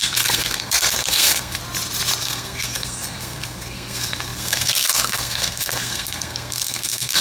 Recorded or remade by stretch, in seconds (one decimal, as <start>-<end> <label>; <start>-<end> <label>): 0.0-1.6 remade; 1.6-2.2 recorded; 2.2-7.2 remade